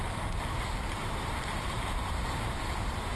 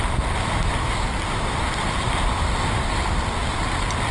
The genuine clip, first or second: second